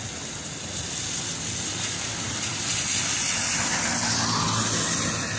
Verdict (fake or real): real